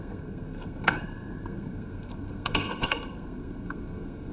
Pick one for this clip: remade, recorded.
remade